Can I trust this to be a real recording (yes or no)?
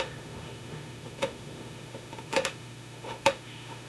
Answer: no